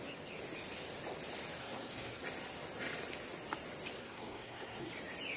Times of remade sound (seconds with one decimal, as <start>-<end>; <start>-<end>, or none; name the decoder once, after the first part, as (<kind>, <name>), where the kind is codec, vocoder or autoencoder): 1.6-2.2 (codec, SNAC); 4.0-4.9